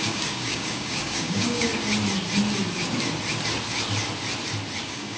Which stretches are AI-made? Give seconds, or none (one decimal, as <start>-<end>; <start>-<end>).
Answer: 0.0-1.7; 4.8-5.2